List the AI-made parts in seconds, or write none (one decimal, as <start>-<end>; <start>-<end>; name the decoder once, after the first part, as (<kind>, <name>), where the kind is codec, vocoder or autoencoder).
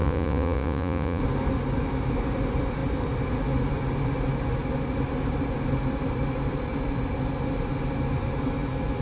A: 0.0-1.2 (vocoder, Vocos)